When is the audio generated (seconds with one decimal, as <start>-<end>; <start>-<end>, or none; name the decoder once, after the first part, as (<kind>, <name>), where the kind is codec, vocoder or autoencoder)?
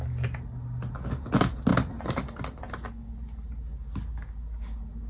none